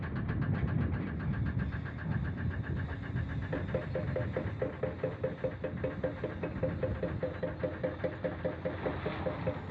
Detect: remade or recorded recorded